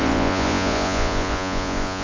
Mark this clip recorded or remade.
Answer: remade